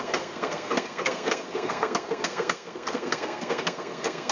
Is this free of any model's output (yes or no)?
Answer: no